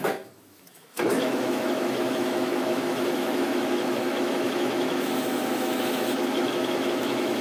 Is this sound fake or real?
fake